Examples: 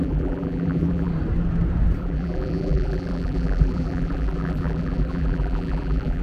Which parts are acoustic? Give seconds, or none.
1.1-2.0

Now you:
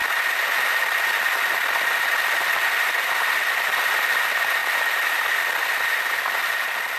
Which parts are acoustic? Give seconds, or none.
0.0-7.0

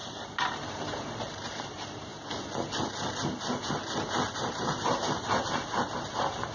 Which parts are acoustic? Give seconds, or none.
2.1-4.5

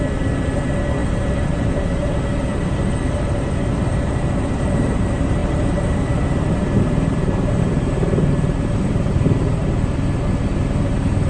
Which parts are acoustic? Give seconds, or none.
9.6-10.6

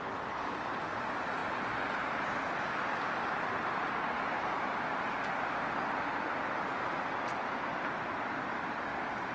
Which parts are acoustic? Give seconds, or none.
0.0-1.4; 4.9-9.3

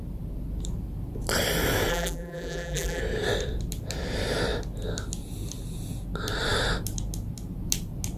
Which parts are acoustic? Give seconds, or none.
0.0-1.9; 3.0-8.2

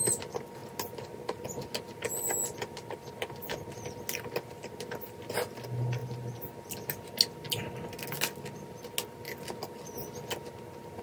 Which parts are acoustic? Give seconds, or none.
0.0-11.0

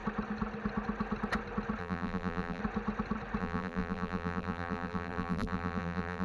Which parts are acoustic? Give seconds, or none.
0.0-1.8; 2.6-3.4